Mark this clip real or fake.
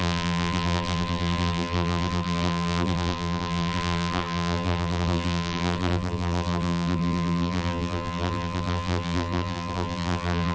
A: fake